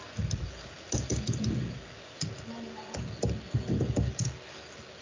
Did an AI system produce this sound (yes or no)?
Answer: no